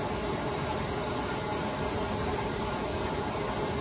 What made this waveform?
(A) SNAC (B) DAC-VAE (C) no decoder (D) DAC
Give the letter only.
C